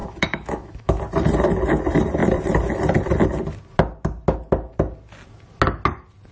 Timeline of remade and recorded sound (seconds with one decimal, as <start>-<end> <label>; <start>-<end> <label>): 0.0-1.0 remade; 1.0-6.3 recorded